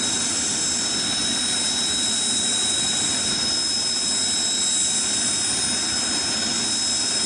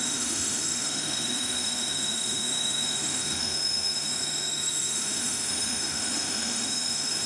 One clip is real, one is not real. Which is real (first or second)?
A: first